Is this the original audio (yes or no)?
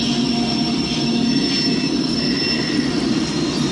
yes